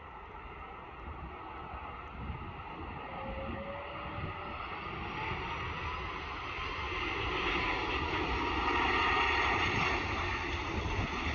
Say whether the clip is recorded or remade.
recorded